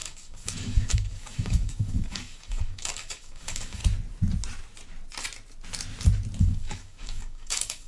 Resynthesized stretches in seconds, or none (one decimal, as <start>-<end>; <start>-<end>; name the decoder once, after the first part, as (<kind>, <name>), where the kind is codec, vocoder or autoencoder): 0.0-3.8 (codec, DAC); 6.4-7.9